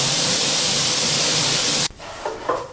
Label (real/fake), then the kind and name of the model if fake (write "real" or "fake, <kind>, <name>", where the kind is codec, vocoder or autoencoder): fake, vocoder, BigVGAN v2